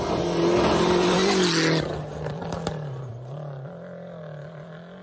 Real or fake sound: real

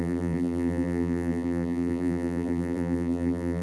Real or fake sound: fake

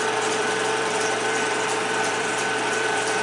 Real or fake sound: fake